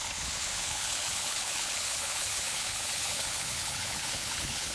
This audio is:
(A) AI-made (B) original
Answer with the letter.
A